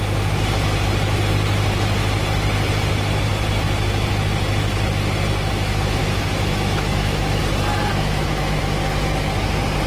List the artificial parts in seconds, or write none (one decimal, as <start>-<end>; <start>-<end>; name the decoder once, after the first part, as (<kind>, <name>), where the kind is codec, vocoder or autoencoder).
6.0-7.4 (autoencoder, DAC-VAE); 7.9-8.6